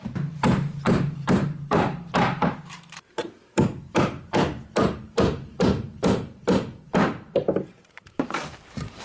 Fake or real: fake